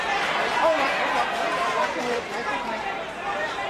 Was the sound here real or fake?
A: fake